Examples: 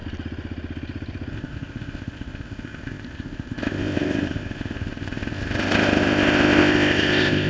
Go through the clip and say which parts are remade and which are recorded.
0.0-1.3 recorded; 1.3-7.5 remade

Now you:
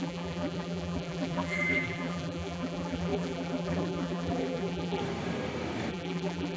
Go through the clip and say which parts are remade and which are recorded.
0.0-5.0 remade; 5.0-5.9 recorded; 5.9-6.6 remade

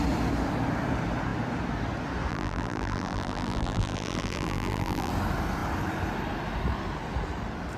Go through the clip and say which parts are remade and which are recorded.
0.0-2.3 recorded; 2.3-5.1 remade; 5.1-7.8 recorded

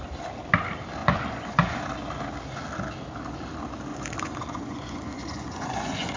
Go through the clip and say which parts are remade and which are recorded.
0.0-1.0 recorded; 1.0-1.8 remade; 1.8-3.9 recorded; 3.9-6.2 remade

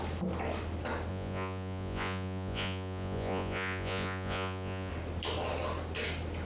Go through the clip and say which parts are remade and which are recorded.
0.0-1.1 recorded; 1.1-4.9 remade; 4.9-6.4 recorded

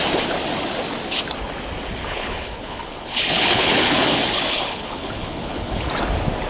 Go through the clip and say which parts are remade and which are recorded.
0.0-2.0 recorded; 2.0-5.9 remade; 5.9-6.5 recorded

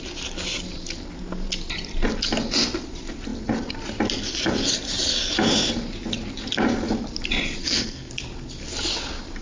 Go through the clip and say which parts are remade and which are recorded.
0.0-7.6 recorded; 7.6-8.1 remade; 8.1-9.4 recorded